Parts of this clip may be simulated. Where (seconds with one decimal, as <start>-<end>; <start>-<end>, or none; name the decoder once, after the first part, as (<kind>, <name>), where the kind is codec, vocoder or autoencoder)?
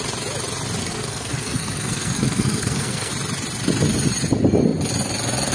0.8-3.1 (codec, SNAC)